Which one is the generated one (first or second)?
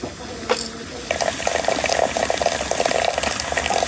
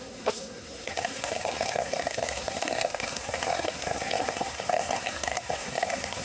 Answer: second